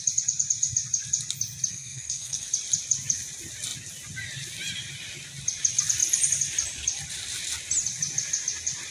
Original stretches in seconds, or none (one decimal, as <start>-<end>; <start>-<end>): 0.0-1.7; 2.5-8.9